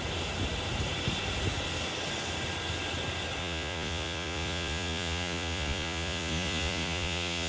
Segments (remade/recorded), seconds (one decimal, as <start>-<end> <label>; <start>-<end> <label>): 0.0-3.4 recorded; 3.4-7.5 remade